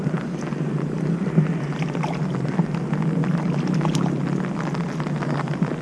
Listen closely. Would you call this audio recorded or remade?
recorded